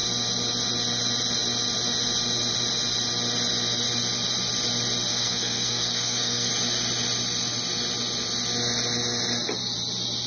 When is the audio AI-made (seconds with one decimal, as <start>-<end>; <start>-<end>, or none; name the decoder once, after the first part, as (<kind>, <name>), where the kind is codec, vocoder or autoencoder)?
5.1-6.5 (codec, SNAC)